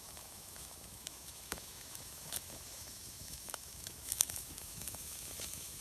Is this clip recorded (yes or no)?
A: no